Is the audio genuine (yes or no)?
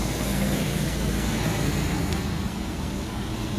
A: no